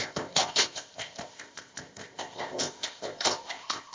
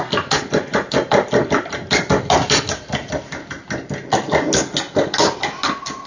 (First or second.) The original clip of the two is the second